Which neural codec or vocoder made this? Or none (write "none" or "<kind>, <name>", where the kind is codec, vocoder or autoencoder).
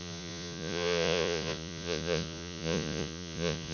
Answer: vocoder, Vocos